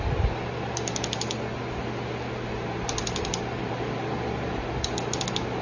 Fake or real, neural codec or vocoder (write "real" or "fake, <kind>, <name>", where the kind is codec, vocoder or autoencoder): real